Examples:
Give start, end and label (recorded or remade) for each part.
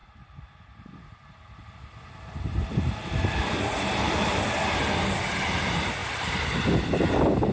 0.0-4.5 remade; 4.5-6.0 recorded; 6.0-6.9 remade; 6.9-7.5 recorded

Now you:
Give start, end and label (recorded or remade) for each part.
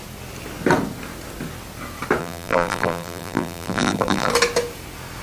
0.0-2.2 recorded; 2.2-4.3 remade; 4.3-5.2 recorded